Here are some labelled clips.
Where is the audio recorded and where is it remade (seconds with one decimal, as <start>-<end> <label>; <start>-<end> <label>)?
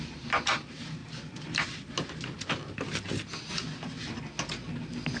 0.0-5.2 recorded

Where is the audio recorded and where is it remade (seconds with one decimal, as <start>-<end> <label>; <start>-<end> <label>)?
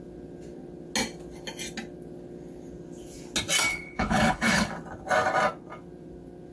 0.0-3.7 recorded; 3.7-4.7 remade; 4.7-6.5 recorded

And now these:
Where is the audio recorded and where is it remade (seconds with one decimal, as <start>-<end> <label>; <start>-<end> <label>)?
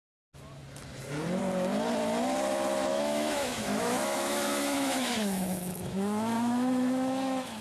0.0-2.9 recorded; 2.9-7.6 remade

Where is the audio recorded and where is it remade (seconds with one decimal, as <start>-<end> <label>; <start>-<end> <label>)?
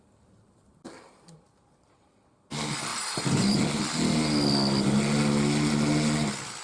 0.0-2.9 recorded; 2.9-3.6 remade; 3.6-6.6 recorded